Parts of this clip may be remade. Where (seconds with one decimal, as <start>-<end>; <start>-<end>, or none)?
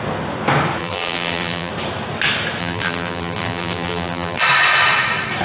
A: 0.8-1.7; 2.6-4.4